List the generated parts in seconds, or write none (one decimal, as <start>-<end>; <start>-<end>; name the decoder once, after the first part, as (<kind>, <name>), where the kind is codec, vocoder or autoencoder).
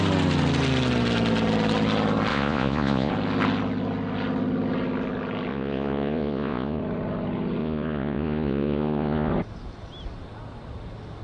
2.3-3.1 (vocoder, Vocos); 5.5-6.8; 7.6-9.3